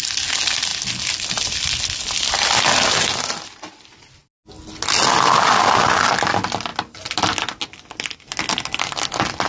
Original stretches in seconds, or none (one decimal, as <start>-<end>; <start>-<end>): 0.0-9.5